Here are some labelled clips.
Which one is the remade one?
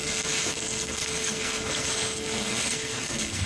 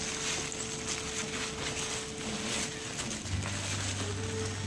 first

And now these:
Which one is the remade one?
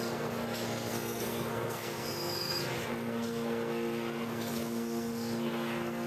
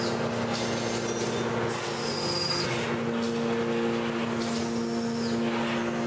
first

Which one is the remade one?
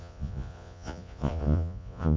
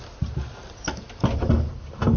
first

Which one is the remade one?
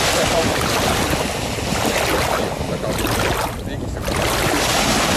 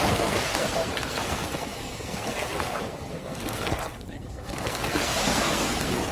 second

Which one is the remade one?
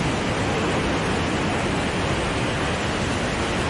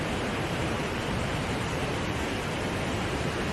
second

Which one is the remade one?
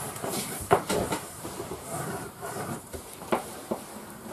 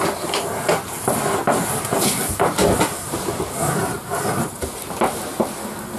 first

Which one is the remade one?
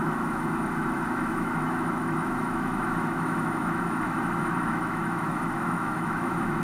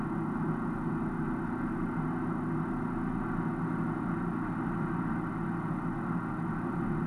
first